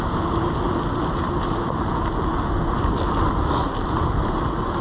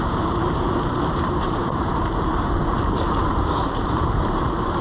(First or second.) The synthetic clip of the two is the second